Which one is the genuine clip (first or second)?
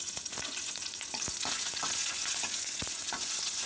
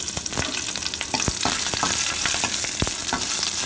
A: second